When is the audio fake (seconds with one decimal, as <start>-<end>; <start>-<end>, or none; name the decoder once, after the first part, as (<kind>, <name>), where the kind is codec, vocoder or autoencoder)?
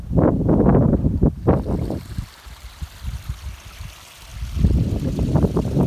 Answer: none